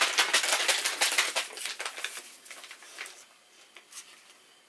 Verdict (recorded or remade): recorded